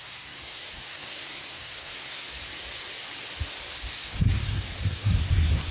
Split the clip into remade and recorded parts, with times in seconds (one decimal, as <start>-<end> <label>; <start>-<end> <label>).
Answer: 0.0-2.4 remade; 2.4-3.9 recorded; 3.9-5.7 remade